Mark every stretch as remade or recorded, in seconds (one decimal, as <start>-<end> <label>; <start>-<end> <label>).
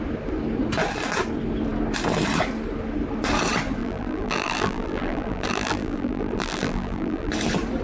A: 0.0-3.8 recorded; 3.8-7.3 remade; 7.3-7.8 recorded